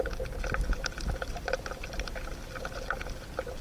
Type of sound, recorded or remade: recorded